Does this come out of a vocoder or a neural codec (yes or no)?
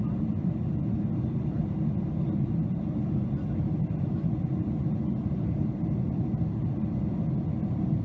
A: no